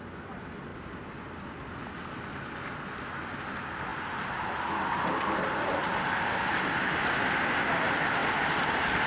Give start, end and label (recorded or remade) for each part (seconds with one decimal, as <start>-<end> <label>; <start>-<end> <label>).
0.0-9.1 recorded